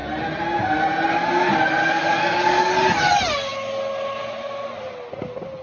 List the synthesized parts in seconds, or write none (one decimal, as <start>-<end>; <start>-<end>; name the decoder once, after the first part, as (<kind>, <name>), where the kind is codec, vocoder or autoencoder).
1.8-2.7 (codec, DAC)